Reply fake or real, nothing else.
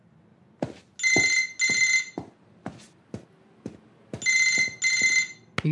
real